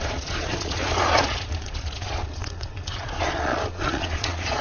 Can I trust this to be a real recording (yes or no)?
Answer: no